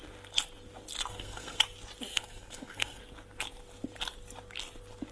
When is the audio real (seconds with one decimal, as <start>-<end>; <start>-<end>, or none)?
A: 0.0-1.1; 1.6-2.1; 3.0-5.1